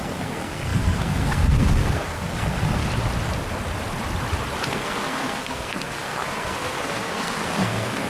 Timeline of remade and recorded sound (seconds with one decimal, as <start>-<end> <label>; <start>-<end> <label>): 0.0-2.8 remade; 2.8-4.7 recorded; 4.7-8.1 remade